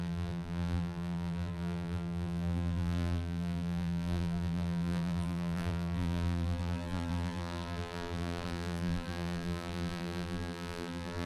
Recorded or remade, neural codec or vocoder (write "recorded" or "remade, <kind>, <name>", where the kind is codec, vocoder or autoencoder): remade, vocoder, BigVGAN v2